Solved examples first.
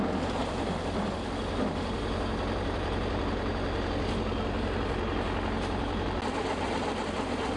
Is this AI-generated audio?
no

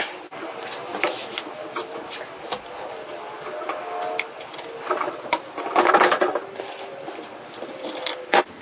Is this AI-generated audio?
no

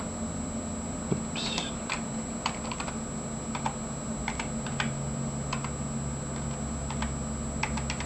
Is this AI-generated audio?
no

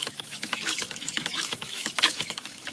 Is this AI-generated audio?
yes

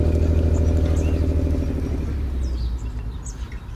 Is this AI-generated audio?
no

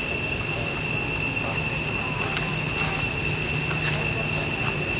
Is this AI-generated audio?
no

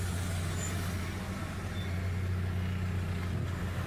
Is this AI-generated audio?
no